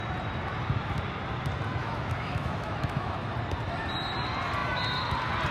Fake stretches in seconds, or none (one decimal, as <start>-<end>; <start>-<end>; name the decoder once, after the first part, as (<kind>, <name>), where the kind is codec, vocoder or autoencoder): 1.8-3.3 (autoencoder, DAC-VAE)